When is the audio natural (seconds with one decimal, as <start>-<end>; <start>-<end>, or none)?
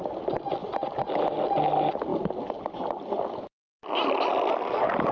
0.0-5.1